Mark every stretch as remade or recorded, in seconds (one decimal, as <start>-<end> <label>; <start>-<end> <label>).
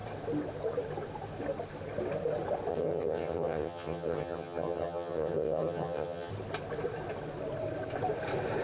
0.0-2.7 recorded; 2.7-6.3 remade; 6.3-8.6 recorded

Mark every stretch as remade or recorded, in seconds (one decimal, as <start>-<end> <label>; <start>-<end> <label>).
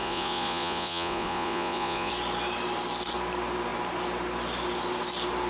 0.0-2.1 remade; 2.1-5.5 recorded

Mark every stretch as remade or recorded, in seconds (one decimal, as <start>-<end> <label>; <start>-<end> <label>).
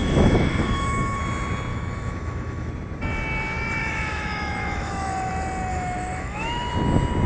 0.0-1.2 remade; 1.2-1.7 recorded; 1.7-2.7 remade; 2.7-3.8 recorded; 3.8-5.3 remade; 5.3-5.7 recorded; 5.7-6.7 remade; 6.7-7.3 recorded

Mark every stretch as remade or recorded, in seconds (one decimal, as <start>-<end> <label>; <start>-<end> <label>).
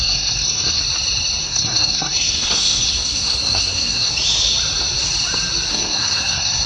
0.0-0.8 remade; 0.8-1.4 recorded; 1.4-4.1 remade; 4.1-5.7 recorded; 5.7-6.7 remade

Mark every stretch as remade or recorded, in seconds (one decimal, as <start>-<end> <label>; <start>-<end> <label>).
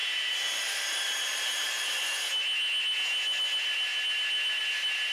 0.0-2.2 remade; 2.2-5.1 recorded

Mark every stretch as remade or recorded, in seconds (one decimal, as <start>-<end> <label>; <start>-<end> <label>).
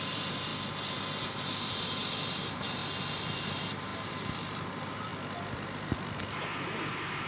0.0-0.5 remade; 0.5-1.2 recorded; 1.2-2.8 remade; 2.8-3.4 recorded; 3.4-5.1 remade; 5.1-6.4 recorded; 6.4-7.3 remade